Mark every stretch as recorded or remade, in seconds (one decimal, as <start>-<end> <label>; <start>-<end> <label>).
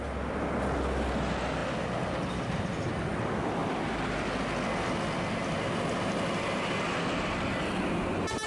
0.0-8.5 recorded